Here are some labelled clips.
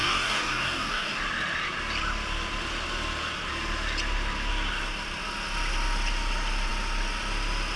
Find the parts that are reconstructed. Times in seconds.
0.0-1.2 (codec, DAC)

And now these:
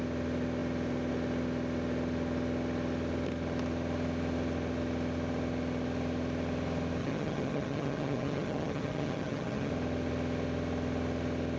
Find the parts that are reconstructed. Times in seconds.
7.0-9.7 (vocoder, HiFi-GAN)